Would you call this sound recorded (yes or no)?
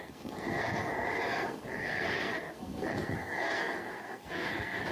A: no